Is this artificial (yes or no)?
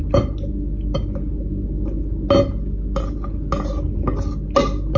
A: no